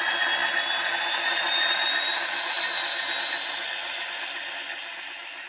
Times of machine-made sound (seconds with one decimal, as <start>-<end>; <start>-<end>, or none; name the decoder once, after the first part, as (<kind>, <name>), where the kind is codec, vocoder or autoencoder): none